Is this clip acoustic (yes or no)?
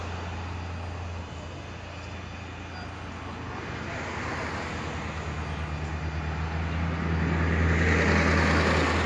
yes